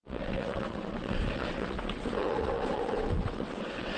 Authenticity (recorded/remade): remade